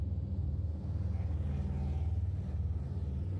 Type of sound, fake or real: real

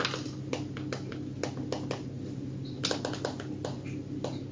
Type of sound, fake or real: real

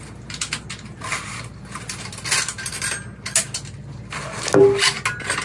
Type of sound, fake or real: real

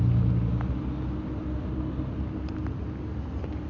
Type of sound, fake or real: real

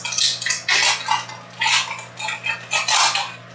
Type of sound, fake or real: real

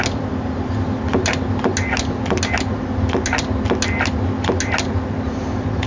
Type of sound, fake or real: real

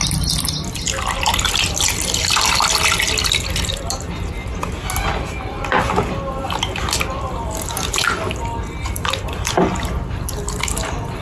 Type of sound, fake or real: real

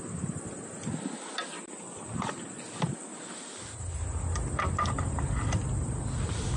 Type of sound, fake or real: real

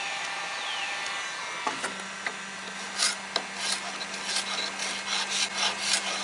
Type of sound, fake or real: real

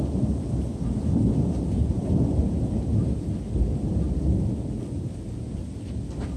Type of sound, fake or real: real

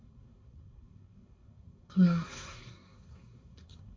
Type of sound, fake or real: fake